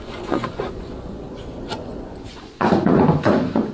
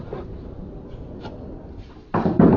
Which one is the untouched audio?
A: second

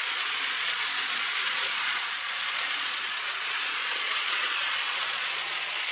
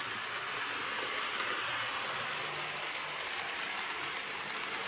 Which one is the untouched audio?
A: second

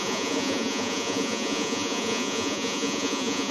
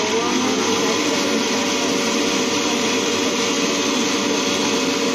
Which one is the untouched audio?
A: second